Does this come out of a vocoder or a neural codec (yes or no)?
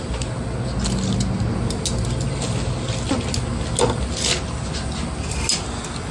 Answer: no